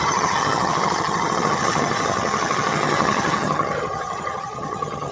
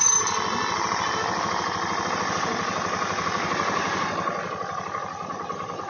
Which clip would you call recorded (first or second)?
second